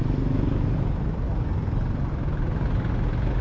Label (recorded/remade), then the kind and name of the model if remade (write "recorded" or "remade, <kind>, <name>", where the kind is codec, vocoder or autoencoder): recorded